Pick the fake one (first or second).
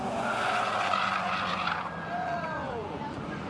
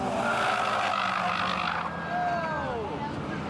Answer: first